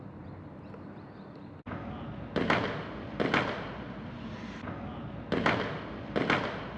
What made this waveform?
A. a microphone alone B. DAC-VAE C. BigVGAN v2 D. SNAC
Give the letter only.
A